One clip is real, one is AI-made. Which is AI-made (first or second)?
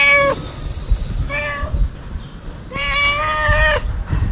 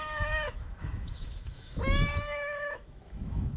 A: second